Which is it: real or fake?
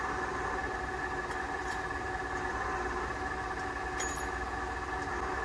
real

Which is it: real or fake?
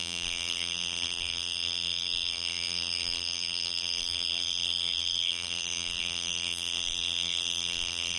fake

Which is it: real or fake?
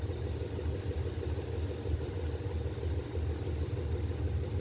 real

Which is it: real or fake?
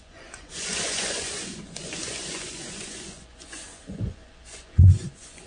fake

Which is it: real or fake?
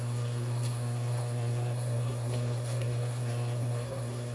fake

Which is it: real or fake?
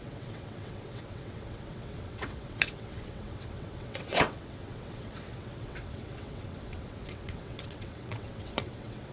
fake